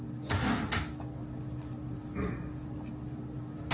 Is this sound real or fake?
real